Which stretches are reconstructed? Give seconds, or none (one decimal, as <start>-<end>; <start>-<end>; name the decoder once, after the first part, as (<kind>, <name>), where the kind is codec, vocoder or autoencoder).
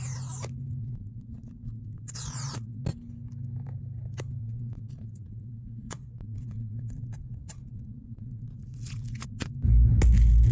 0.8-2.8 (vocoder, Vocos); 4.4-9.5